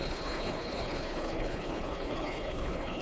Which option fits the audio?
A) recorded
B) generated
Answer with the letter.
B